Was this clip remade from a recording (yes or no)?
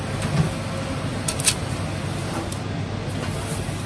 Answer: no